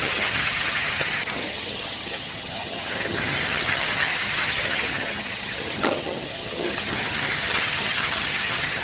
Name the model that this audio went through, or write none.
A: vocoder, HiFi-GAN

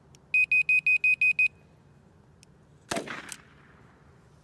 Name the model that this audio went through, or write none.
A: none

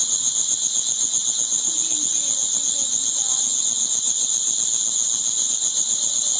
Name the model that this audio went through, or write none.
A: none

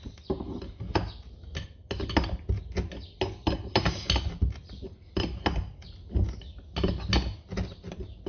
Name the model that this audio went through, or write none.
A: none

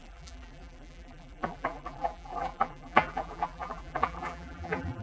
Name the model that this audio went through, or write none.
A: vocoder, BigVGAN v2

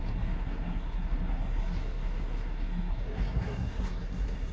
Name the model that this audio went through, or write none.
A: codec, SNAC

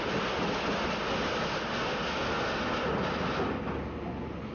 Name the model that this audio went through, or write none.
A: none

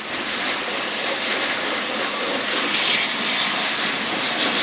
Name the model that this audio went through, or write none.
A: none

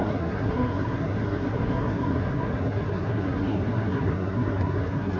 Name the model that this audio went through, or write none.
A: codec, SNAC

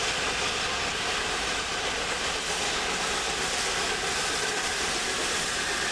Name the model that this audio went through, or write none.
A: none